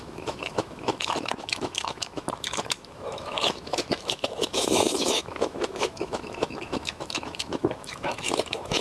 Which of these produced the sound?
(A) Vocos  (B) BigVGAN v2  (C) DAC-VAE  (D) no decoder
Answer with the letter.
C